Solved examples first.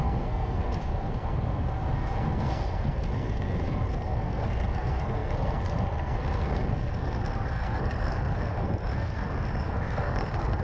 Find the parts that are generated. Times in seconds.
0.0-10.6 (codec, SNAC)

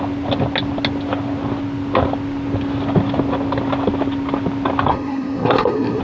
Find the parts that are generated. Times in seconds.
4.9-6.0 (codec, SNAC)

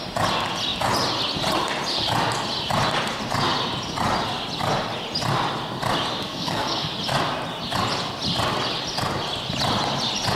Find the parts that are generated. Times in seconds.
6.2-6.9 (codec, SNAC)